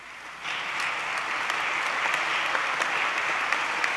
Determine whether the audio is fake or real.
real